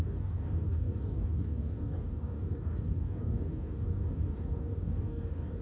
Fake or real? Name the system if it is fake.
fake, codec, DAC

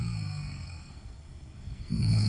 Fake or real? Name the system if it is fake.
fake, codec, SNAC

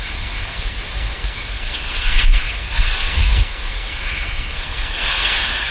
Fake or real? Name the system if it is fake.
fake, codec, SNAC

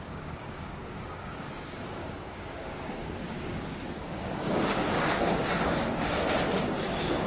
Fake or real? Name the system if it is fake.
fake, codec, DAC